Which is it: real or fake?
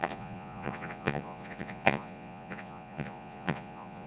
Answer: fake